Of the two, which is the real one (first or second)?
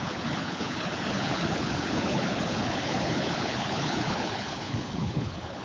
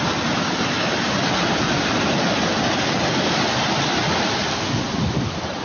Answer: second